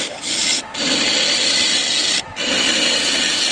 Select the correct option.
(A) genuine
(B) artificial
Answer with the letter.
A